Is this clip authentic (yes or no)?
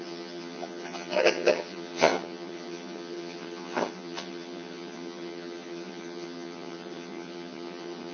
no